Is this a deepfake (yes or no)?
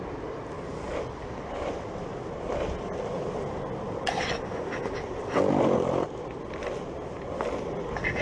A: no